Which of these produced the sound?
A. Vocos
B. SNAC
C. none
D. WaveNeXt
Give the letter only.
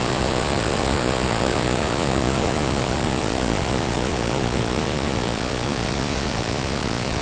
A